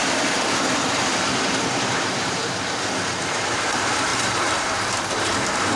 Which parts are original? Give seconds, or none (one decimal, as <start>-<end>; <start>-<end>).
2.4-3.1